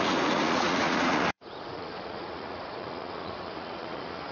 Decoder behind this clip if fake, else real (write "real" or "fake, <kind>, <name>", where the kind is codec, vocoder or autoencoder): fake, vocoder, Vocos